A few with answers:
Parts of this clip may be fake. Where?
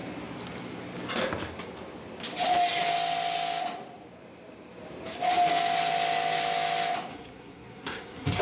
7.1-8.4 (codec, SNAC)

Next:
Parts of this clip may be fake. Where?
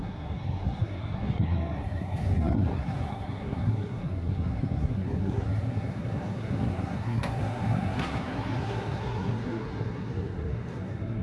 0.0-11.2 (codec, SNAC)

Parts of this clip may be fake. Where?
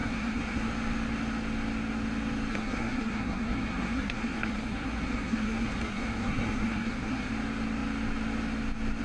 0.0-0.7 (codec, SNAC); 2.5-7.3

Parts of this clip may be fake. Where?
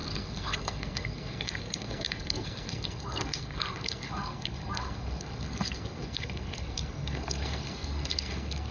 0.0-8.7 (codec, SNAC)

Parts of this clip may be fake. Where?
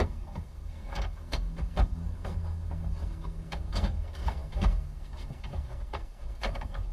0.0-6.9 (codec, SNAC)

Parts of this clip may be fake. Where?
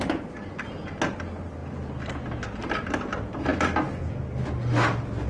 none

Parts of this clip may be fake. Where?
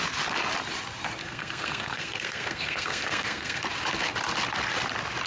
1.2-3.6 (codec, SNAC)